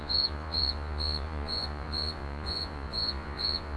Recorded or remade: remade